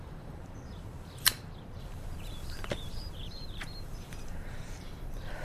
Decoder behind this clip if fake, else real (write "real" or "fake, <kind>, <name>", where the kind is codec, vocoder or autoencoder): fake, vocoder, BigVGAN v2